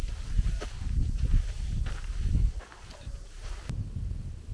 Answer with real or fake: fake